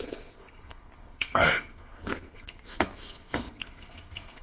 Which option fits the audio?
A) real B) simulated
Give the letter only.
B